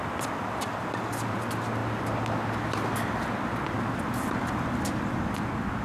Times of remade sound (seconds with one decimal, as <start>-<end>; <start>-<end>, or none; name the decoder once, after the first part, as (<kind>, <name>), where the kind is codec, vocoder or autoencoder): none

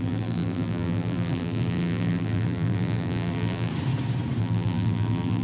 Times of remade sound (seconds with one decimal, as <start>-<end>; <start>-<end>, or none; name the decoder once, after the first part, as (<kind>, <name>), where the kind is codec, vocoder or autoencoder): 0.0-3.7 (vocoder, BigVGAN v2); 4.4-5.4

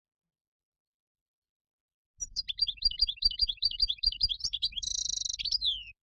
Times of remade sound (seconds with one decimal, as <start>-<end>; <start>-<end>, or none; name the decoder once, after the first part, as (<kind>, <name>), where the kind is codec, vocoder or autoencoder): 2.2-5.0 (vocoder, BigVGAN v2)

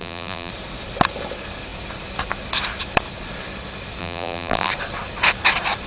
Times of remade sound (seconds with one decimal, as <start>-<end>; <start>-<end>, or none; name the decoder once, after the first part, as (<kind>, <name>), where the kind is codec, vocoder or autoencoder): 0.0-0.5 (vocoder, BigVGAN v2); 4.0-4.7

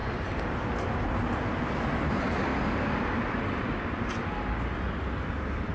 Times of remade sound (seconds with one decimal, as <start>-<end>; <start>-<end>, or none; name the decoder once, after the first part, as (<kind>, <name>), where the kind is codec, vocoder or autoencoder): none

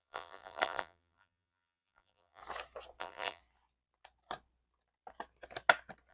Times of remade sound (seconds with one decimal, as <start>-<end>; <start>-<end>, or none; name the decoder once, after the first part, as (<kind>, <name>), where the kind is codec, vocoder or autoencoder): 0.0-2.4 (vocoder, BigVGAN v2); 3.0-3.4